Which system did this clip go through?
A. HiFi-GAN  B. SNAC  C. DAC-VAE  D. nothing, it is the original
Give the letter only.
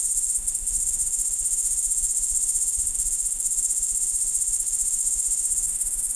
C